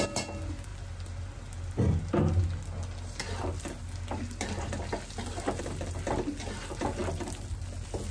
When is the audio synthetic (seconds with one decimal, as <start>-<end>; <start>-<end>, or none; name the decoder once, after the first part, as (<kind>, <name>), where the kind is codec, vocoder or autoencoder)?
none